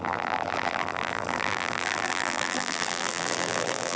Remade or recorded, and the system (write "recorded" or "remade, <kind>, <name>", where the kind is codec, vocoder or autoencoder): remade, vocoder, BigVGAN v2